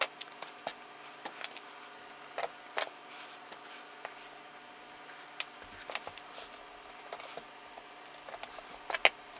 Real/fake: real